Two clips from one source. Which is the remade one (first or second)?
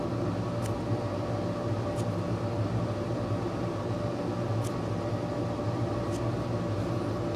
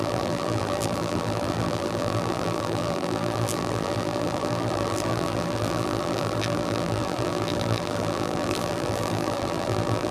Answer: second